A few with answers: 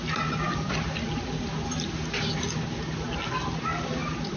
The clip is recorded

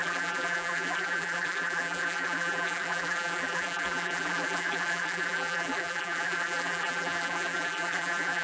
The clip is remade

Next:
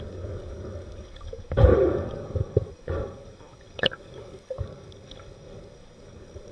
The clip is remade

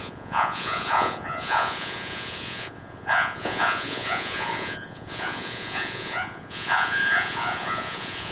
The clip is remade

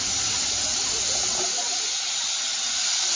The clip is recorded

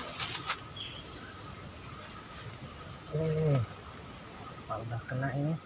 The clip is recorded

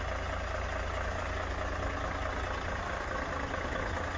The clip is recorded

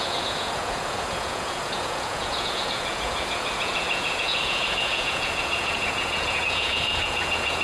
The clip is remade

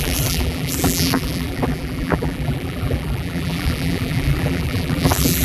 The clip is remade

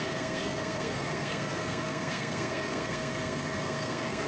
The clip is remade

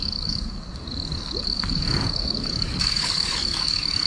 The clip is remade